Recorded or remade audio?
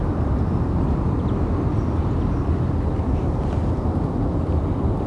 recorded